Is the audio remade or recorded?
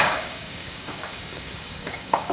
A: remade